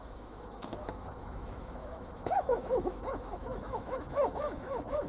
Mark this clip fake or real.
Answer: fake